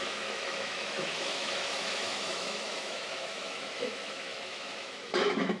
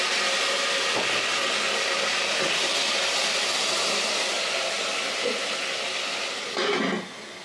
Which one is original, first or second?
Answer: second